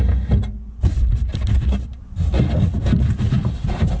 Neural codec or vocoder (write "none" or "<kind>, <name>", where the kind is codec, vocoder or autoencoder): none